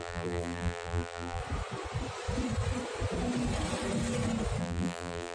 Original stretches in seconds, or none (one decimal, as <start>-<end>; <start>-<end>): 1.4-4.6